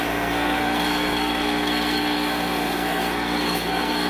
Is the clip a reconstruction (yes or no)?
yes